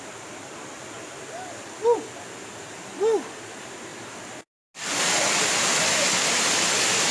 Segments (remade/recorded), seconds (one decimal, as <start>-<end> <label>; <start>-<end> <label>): 0.0-7.1 recorded